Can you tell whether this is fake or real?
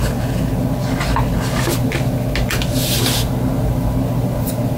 real